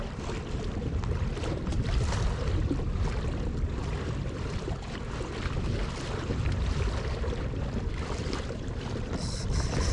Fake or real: fake